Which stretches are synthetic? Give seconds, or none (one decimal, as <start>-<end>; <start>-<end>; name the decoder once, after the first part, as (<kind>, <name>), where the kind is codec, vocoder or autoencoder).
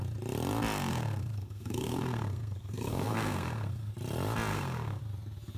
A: 0.9-3.9 (codec, SNAC); 4.5-5.0